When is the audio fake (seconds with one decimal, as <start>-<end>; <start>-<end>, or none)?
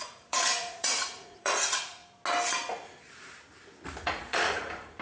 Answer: 0.0-2.0; 4.0-5.0